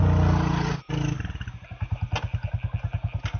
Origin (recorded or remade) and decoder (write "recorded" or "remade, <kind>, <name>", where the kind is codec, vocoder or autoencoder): recorded